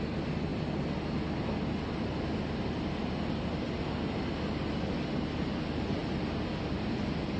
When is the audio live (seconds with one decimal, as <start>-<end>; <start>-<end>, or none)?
0.0-7.4